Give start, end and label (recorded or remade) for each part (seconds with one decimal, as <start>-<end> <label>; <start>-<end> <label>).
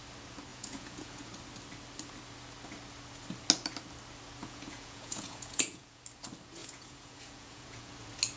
0.0-0.5 recorded; 0.5-1.3 remade; 1.3-4.4 recorded; 4.4-6.0 remade; 6.0-6.6 recorded; 6.6-7.9 remade; 7.9-8.4 recorded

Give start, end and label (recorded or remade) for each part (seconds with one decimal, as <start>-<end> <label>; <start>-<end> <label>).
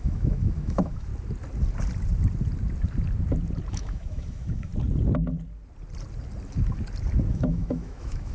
0.0-1.1 remade; 1.1-3.7 recorded; 3.7-4.7 remade; 4.7-7.3 recorded; 7.3-8.3 remade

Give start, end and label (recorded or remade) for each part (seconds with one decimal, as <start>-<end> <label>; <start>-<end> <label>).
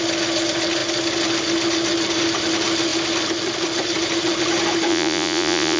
0.0-4.9 recorded; 4.9-5.8 remade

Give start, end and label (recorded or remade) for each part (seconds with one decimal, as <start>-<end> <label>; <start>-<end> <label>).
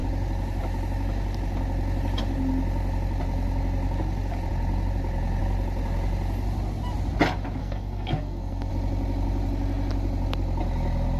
0.0-7.6 recorded; 7.6-8.7 remade; 8.7-11.2 recorded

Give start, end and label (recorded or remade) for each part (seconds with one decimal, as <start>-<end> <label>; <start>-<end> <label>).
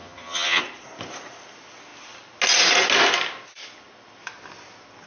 0.0-0.6 remade; 0.6-5.1 recorded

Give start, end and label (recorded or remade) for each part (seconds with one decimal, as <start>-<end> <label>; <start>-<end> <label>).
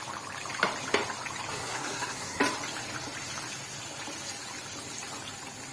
0.0-1.5 recorded; 1.5-2.4 remade; 2.4-5.7 recorded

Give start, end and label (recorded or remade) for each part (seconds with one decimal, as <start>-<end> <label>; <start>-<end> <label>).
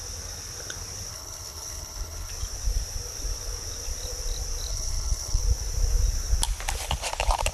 0.0-1.1 recorded; 1.1-2.3 remade; 2.3-4.7 recorded; 4.7-5.4 remade; 5.4-7.5 recorded